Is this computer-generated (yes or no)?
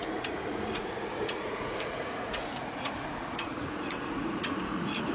yes